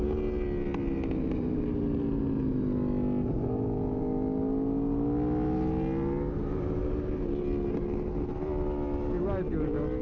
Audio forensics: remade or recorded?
recorded